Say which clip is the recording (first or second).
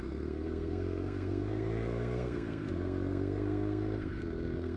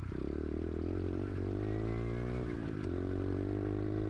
second